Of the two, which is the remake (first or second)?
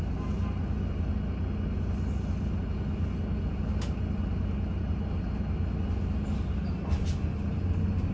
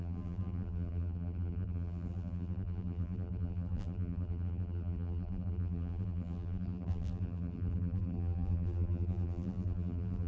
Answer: second